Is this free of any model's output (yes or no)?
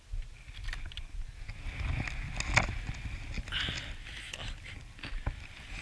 yes